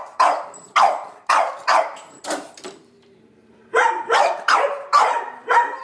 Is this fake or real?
fake